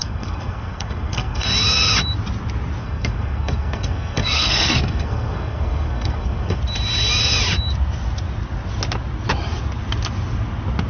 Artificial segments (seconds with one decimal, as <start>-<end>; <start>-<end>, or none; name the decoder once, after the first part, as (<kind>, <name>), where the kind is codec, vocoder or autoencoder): 0.0-1.5 (codec, SNAC); 2.8-6.6